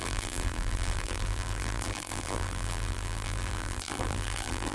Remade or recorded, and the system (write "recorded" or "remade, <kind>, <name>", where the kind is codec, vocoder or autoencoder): remade, vocoder, BigVGAN v2